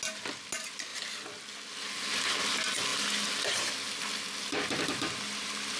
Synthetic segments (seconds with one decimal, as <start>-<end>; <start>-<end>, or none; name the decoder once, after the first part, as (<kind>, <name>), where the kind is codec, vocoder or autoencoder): none